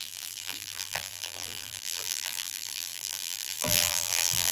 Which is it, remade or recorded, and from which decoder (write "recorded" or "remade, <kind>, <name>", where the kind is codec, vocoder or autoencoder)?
remade, vocoder, BigVGAN v2